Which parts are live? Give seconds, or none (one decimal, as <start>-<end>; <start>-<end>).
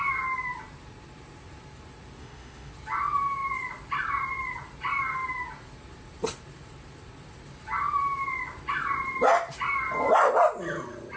0.0-2.2; 2.7-11.2